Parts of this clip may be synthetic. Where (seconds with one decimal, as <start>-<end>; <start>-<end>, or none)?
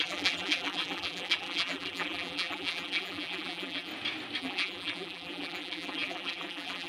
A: 0.0-3.9; 4.4-6.9